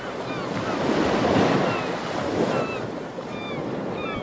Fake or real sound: real